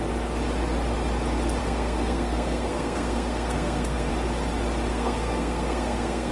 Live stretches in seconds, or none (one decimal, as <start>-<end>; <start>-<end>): 0.0-1.6; 4.1-4.9